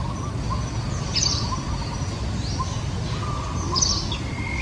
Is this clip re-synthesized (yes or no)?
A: no